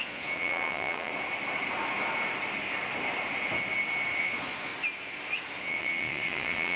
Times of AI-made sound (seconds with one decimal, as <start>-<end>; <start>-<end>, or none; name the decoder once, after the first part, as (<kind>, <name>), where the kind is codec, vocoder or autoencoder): 0.0-1.1 (vocoder, Vocos); 4.2-4.7; 5.6-6.8

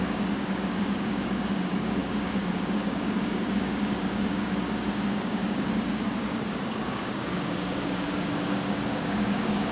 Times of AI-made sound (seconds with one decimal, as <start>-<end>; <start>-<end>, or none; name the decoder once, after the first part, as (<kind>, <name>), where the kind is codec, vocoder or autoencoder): 0.0-9.7 (codec, DAC)

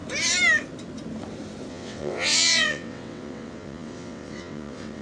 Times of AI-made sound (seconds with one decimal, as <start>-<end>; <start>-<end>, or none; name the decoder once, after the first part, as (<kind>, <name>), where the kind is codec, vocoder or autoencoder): 1.7-5.0 (vocoder, WaveNeXt)

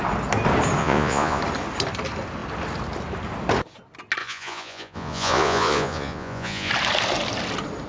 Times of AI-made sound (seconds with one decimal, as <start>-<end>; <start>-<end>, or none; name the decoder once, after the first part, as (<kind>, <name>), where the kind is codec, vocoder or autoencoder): 0.8-1.4 (vocoder, Vocos); 4.2-6.7